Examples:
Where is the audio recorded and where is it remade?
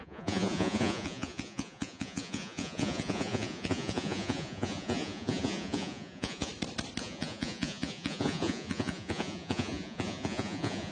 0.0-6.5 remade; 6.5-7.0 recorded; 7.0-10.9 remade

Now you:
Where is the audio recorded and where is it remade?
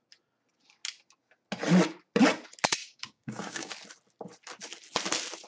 0.0-2.8 recorded; 2.8-3.7 remade; 3.7-5.5 recorded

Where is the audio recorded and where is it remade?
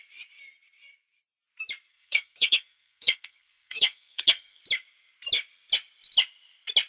0.0-1.9 recorded; 1.9-4.6 remade; 4.6-6.9 recorded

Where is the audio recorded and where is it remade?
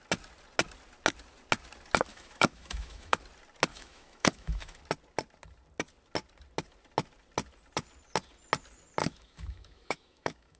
0.0-2.1 recorded; 2.1-3.2 remade; 3.2-3.7 recorded; 3.7-4.8 remade; 4.8-9.0 recorded; 9.0-10.6 remade